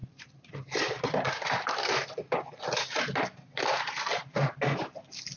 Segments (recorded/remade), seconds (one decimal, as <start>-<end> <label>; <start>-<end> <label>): 0.0-2.6 remade; 2.6-5.4 recorded